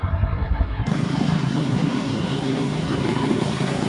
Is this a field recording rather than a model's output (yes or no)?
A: no